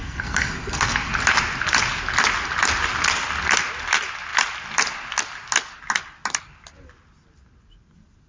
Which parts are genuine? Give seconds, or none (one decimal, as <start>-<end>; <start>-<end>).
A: 1.1-8.3